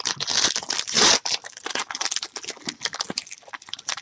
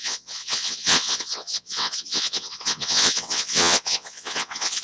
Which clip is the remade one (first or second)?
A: second